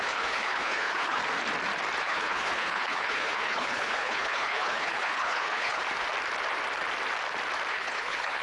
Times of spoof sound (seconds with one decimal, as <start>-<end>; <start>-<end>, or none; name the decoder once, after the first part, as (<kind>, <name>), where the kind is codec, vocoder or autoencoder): 0.0-1.2 (codec, HILCodec); 2.0-5.8; 7.7-8.4